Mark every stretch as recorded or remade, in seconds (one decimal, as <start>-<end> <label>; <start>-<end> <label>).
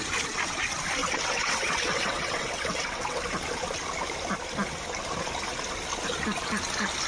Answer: 0.0-1.0 recorded; 1.0-3.2 remade; 3.2-7.1 recorded